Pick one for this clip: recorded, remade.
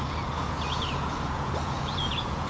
remade